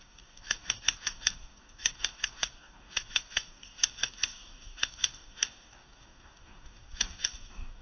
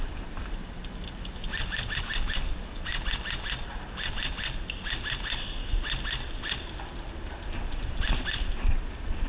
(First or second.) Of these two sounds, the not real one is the first